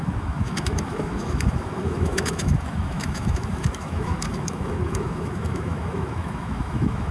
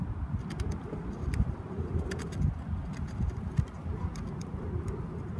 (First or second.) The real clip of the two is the second